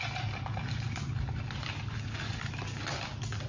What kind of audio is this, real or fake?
real